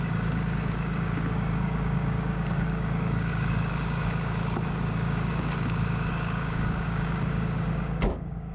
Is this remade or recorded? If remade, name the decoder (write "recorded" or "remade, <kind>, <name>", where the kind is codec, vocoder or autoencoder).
remade, codec, DAC